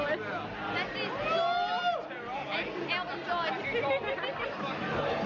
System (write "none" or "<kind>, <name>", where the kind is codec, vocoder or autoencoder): none